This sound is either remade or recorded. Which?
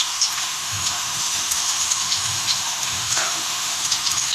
remade